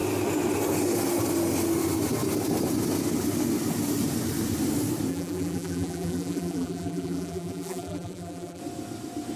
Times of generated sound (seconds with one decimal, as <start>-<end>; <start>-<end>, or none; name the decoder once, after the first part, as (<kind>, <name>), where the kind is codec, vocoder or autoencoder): 5.1-8.6 (vocoder, BigVGAN v2)